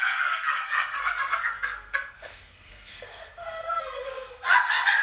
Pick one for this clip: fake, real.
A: fake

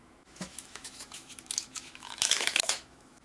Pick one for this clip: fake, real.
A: fake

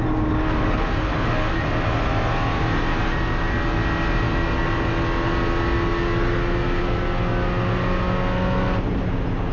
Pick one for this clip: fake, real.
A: real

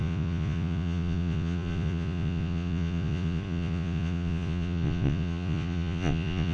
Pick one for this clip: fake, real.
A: fake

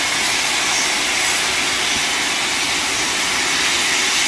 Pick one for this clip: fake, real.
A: real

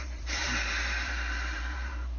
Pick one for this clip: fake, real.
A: fake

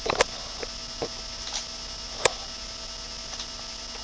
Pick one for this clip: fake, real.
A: real